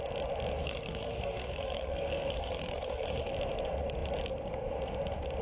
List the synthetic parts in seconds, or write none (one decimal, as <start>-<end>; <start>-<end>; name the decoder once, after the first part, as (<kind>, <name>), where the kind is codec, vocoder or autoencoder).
0.6-3.3 (codec, SNAC)